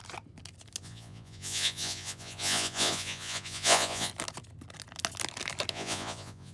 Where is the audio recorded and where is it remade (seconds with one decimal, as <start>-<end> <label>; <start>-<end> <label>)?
0.0-0.8 recorded; 0.8-4.1 remade; 4.1-5.7 recorded; 5.7-6.5 remade